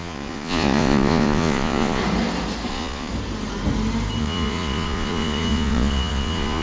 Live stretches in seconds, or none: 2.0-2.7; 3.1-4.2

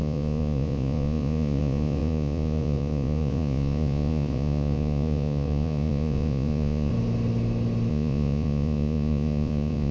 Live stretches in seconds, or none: 6.9-7.9